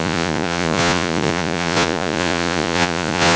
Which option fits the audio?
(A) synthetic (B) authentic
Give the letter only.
A